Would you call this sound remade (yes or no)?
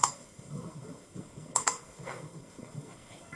yes